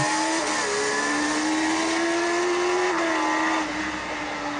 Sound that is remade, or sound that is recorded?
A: recorded